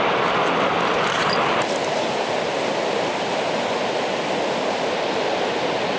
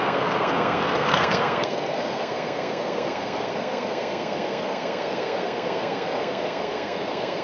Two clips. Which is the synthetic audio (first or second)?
second